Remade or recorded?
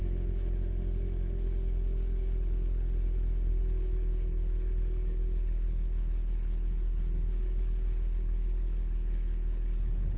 remade